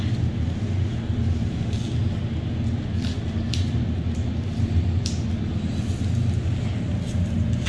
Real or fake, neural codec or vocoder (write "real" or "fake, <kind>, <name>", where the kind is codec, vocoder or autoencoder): real